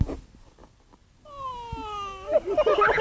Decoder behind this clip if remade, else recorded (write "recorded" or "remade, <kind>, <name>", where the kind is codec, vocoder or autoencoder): recorded